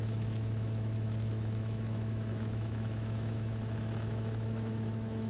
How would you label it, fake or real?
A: fake